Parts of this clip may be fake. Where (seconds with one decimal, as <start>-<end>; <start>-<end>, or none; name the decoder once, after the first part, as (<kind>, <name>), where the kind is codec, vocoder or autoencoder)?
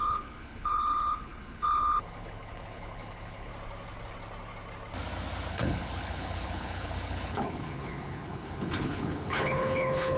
0.0-3.5 (codec, HILCodec); 5.5-10.2